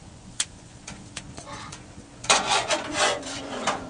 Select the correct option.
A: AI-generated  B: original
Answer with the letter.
A